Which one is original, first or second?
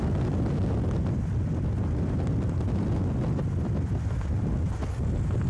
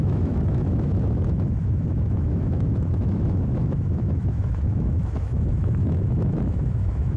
first